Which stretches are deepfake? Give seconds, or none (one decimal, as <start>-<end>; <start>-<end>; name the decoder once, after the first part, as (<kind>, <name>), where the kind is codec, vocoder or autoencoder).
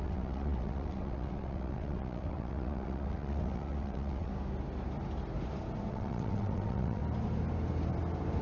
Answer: 0.0-4.3 (vocoder, WaveNeXt); 5.9-7.0